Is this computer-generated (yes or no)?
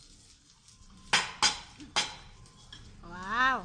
no